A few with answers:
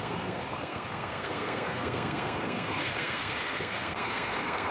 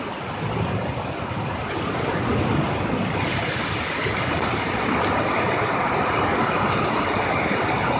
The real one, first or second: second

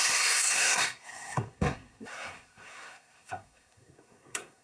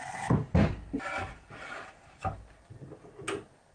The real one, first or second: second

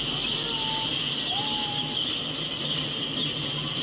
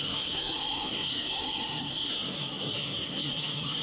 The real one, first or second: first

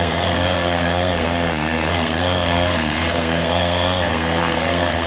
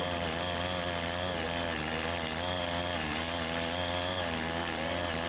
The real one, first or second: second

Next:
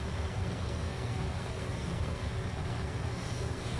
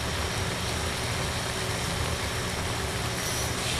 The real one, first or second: second